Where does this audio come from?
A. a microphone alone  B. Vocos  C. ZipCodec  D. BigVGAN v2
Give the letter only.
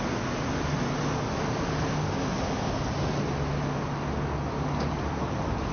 A